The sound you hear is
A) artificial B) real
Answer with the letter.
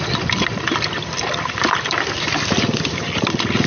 A